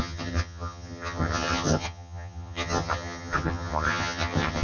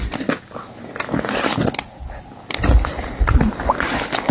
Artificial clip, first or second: first